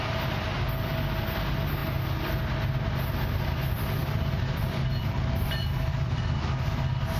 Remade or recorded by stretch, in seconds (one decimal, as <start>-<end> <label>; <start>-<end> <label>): 0.0-4.0 recorded; 4.0-6.2 remade; 6.2-7.2 recorded